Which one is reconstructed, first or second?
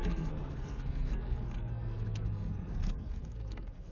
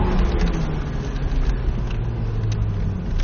first